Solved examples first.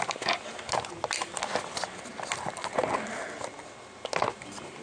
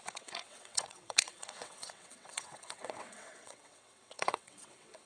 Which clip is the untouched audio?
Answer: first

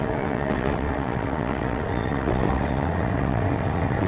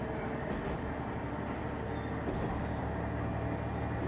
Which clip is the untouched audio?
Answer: second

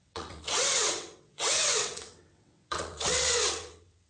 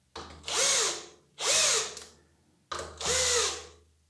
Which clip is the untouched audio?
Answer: second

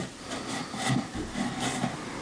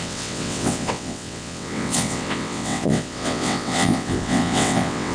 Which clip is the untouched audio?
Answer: first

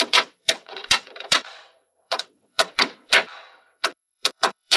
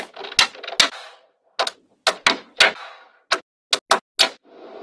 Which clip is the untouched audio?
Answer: second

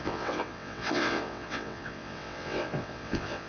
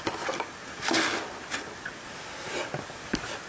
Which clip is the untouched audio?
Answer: second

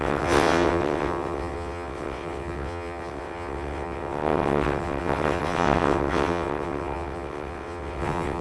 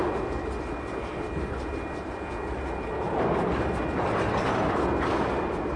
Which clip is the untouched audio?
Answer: second